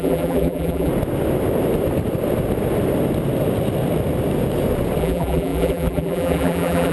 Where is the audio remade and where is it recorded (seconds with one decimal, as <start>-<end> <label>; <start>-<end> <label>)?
0.0-0.9 remade; 0.9-5.0 recorded; 5.0-6.9 remade